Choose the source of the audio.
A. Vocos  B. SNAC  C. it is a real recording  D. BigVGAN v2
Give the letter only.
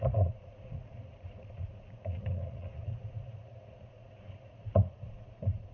A